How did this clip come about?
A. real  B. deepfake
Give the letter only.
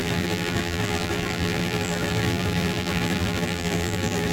B